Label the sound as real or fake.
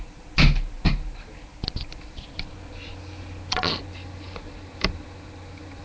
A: real